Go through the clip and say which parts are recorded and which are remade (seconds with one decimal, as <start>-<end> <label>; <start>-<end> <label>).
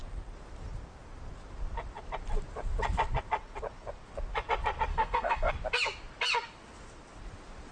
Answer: 0.0-4.9 recorded; 4.9-5.5 remade; 5.5-7.7 recorded